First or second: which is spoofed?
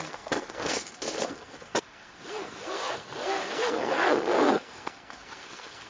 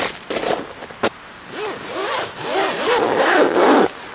first